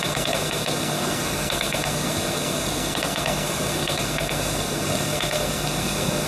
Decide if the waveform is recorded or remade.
remade